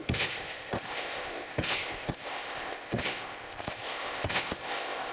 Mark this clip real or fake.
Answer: fake